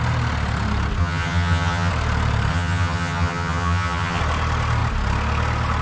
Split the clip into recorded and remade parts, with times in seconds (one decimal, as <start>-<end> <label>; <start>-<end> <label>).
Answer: 0.0-1.0 recorded; 1.0-1.9 remade; 1.9-2.5 recorded; 2.5-4.2 remade; 4.2-5.8 recorded